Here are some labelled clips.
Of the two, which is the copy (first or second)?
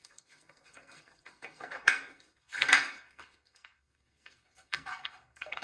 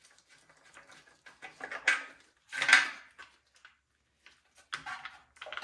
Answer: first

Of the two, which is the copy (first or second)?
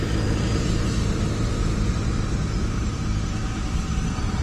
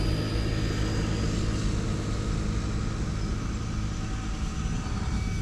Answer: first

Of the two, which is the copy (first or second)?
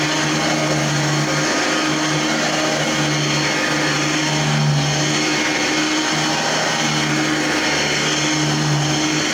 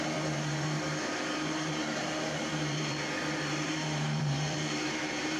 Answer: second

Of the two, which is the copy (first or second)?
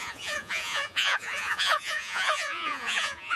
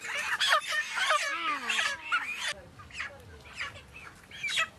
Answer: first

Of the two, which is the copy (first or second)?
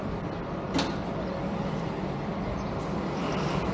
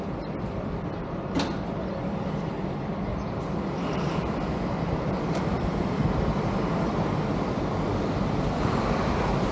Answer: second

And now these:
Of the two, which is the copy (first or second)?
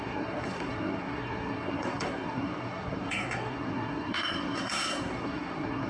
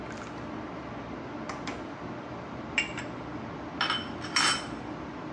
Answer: first